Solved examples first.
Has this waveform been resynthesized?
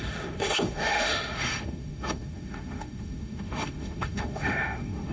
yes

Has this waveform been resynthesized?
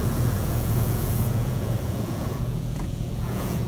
yes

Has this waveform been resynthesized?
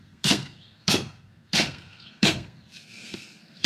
yes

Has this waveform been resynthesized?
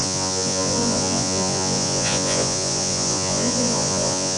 yes